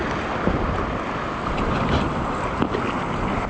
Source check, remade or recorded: recorded